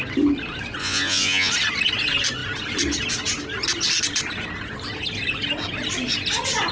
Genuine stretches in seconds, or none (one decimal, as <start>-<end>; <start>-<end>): 0.0-0.8; 1.5-6.7